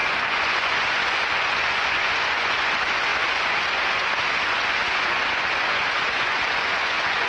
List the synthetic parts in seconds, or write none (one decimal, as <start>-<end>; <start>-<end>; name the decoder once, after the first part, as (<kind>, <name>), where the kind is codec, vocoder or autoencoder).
0.0-7.3 (vocoder, Vocos)